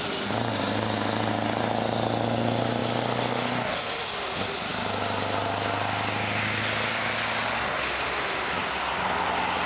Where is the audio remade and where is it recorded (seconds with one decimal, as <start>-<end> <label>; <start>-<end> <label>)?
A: 0.0-9.7 recorded